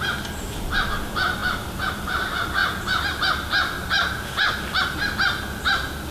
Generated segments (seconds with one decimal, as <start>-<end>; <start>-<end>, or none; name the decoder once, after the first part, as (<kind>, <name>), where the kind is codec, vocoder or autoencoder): none